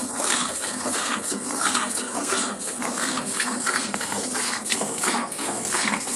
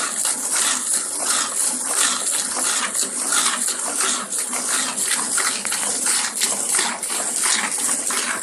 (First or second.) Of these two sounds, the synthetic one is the first